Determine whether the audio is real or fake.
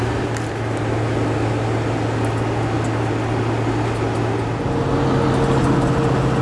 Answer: real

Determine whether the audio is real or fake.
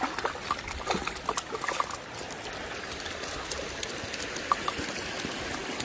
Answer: real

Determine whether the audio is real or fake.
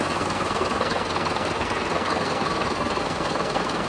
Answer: fake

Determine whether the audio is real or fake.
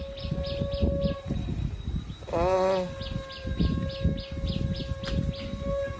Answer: real